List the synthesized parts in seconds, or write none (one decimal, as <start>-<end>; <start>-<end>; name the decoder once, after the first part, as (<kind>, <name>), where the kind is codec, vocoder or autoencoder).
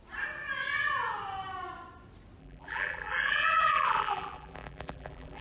2.4-5.4 (vocoder, BigVGAN v2)